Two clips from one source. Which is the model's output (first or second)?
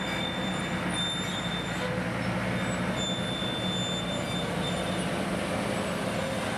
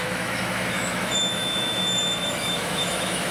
second